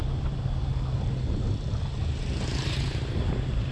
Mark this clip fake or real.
real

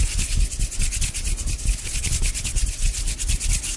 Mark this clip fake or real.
real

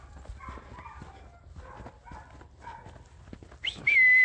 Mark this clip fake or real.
real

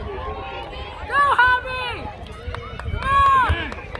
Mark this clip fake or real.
real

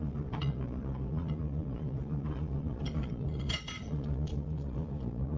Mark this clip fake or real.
fake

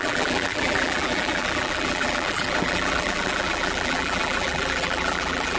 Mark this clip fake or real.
fake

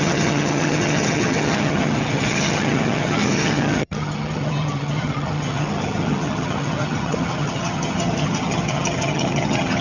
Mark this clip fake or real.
fake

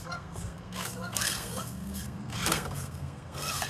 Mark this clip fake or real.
fake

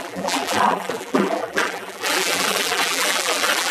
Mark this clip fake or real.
fake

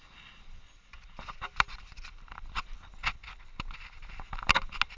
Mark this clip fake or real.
real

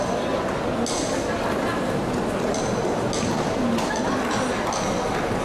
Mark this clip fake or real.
real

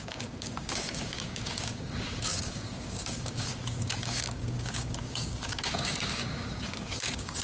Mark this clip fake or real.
fake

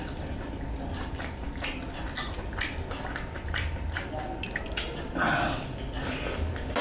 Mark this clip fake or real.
real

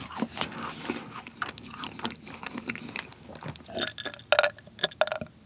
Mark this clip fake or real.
real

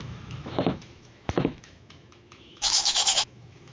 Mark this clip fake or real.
fake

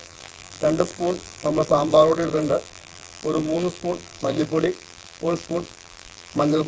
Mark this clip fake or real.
fake